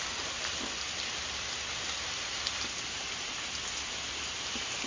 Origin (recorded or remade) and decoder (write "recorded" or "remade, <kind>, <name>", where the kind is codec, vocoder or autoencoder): recorded